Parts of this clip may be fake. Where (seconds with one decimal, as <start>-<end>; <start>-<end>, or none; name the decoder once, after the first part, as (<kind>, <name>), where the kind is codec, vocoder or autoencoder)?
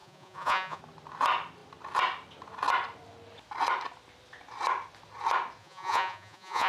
0.0-0.8 (vocoder, Vocos); 5.6-6.7